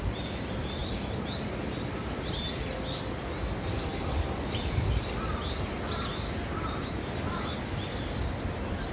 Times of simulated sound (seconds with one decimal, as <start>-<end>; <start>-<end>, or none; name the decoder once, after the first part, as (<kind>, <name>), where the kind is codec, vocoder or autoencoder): none